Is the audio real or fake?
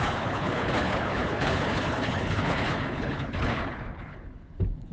fake